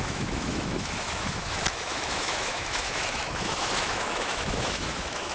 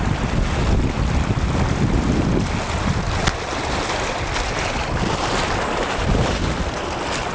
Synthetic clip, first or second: first